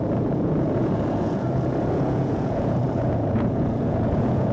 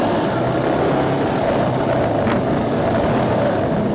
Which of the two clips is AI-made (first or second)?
first